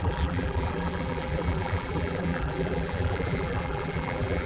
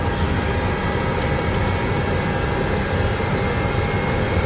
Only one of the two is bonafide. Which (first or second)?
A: second